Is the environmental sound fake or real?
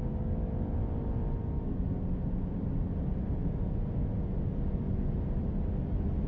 real